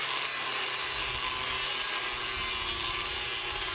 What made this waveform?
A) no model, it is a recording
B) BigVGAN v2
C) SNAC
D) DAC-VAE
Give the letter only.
A